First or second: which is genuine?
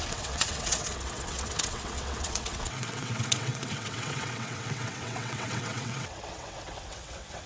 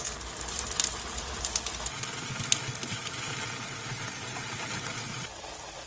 second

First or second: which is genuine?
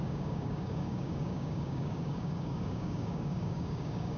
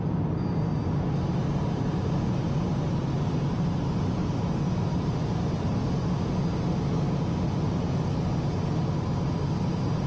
second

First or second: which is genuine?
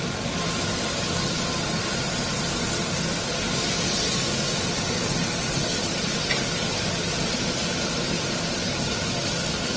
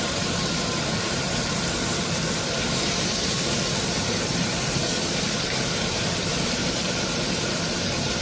first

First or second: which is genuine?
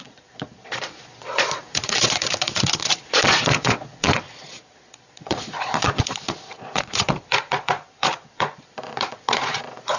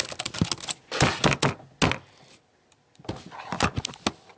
second